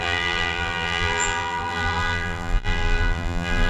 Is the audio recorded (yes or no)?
no